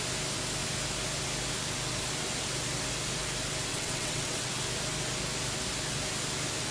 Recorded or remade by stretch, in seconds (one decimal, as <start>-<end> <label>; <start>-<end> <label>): 0.0-3.7 recorded; 3.7-4.5 remade; 4.5-6.7 recorded